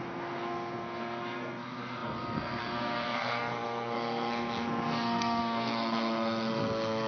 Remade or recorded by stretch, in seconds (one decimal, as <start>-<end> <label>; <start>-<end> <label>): 0.0-7.1 remade